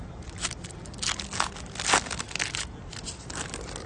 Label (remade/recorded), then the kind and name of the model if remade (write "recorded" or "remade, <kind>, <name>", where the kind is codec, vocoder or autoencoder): recorded